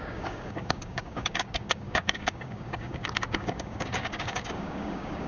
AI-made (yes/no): yes